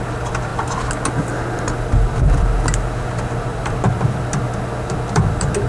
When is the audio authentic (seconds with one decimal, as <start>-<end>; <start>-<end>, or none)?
0.0-5.7

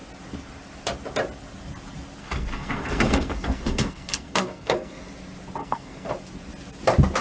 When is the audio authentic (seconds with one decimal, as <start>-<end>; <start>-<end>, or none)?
0.0-2.2; 5.1-5.6; 6.1-7.2

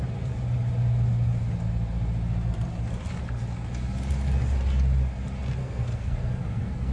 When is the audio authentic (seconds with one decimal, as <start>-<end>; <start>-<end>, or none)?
0.0-5.6

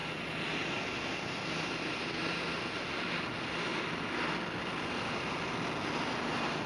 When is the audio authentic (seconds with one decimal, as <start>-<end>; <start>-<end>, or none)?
0.0-6.7

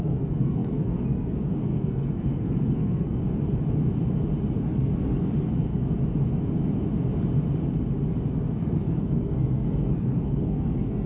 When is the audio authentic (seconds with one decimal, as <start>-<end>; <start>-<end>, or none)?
3.2-4.6; 5.7-8.3

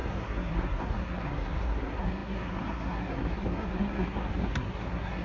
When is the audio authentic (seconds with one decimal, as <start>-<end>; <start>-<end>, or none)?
none